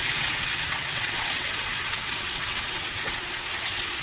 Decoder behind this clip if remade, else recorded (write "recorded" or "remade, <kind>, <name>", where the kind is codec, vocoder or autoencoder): remade, vocoder, WaveNeXt